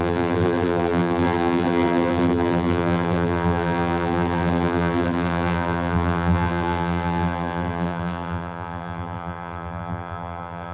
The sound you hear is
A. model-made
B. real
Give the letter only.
A